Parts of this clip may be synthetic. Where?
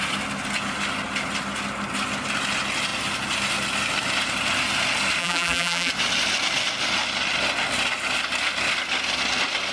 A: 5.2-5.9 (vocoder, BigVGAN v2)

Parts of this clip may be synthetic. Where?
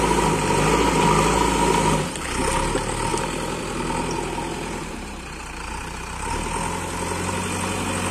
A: 4.8-6.3 (vocoder, BigVGAN v2)